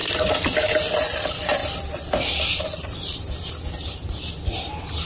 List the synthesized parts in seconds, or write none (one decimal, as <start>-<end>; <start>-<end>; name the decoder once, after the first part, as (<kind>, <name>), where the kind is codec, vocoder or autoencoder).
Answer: none